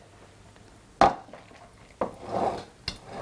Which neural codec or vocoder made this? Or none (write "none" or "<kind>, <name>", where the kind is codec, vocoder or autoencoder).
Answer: none